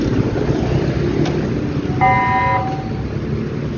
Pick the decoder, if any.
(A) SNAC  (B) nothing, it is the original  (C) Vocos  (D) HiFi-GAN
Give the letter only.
B